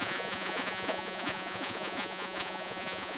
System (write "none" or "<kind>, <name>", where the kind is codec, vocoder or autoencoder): vocoder, Vocos